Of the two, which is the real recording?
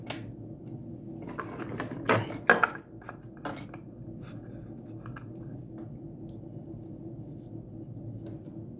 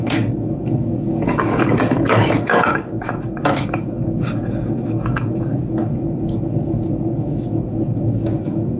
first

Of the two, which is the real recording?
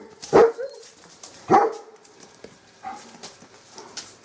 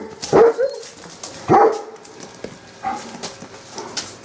second